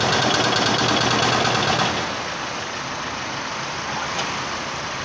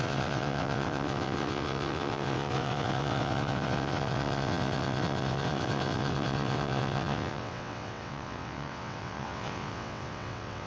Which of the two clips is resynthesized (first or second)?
second